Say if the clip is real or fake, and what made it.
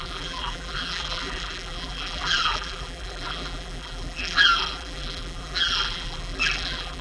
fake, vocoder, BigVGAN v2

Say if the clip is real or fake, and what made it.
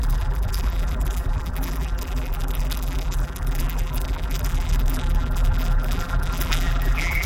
fake, vocoder, BigVGAN v2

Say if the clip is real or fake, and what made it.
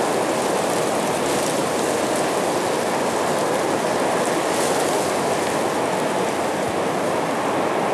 real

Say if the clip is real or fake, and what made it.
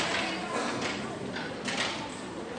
real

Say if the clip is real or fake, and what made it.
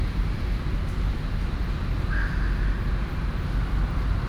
real